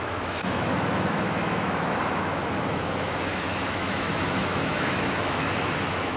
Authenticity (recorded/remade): remade